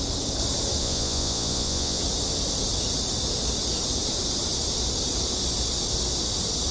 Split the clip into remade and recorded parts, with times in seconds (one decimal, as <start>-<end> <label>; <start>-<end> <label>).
0.0-0.8 recorded; 0.8-2.0 remade; 2.0-6.7 recorded